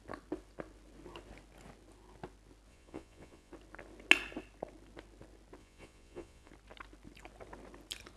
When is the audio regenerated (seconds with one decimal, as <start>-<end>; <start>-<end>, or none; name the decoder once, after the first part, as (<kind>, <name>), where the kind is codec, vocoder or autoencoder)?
2.7-3.5 (vocoder, Vocos); 5.6-6.5

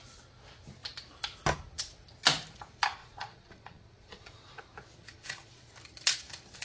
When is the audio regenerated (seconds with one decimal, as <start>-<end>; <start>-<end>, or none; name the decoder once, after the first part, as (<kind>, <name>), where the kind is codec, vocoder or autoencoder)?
3.0-4.6 (vocoder, Vocos); 5.0-5.7

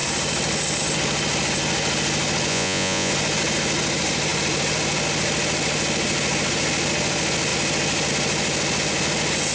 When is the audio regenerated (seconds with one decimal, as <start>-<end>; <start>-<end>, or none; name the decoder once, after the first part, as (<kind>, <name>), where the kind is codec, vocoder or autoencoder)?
2.5-3.1 (vocoder, Vocos)

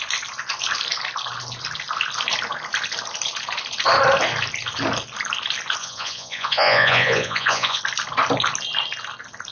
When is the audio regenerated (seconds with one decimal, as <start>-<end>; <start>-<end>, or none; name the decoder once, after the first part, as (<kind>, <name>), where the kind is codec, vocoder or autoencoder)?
5.8-7.8 (vocoder, Vocos)

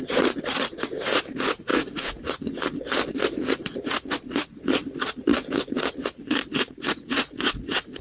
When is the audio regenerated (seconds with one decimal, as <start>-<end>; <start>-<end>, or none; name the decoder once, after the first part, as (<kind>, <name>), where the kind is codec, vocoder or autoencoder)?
0.0-8.0 (vocoder, Vocos)

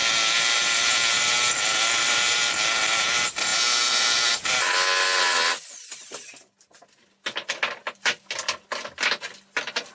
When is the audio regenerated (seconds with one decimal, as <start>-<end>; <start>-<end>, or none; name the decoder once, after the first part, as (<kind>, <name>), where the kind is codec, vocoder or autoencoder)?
none